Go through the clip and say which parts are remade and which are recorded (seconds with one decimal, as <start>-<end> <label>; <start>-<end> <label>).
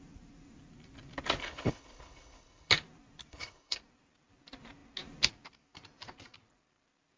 0.0-1.4 recorded; 1.4-2.7 remade; 2.7-3.3 recorded; 3.3-3.8 remade; 3.8-7.2 recorded